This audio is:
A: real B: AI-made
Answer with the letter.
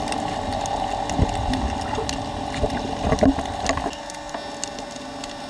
A